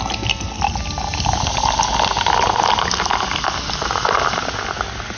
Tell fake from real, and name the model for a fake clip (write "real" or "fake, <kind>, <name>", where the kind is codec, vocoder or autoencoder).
real